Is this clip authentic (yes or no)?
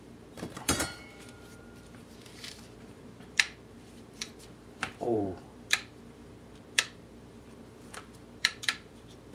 no